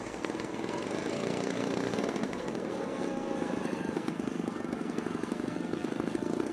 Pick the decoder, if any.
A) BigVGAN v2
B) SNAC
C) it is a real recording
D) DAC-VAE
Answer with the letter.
B